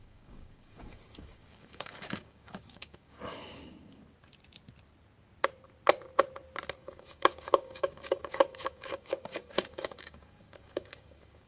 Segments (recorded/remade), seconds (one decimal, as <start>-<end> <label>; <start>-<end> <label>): 0.0-4.0 remade; 4.0-6.8 recorded; 6.8-11.5 remade